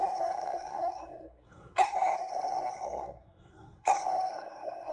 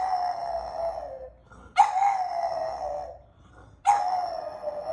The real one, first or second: second